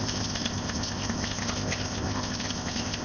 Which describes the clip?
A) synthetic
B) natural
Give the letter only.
A